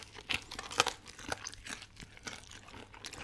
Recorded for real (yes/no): yes